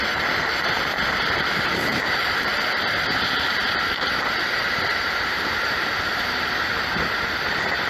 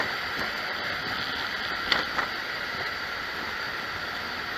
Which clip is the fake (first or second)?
first